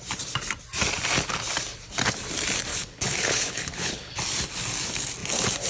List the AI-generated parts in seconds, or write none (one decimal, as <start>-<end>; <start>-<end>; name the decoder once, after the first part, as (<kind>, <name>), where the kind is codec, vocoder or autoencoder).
2.7-4.1 (codec, HILCodec)